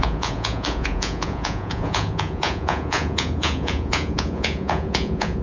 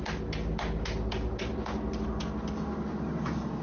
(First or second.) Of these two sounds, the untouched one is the second